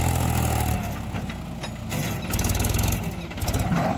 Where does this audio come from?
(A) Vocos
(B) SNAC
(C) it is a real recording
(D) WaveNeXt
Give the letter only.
C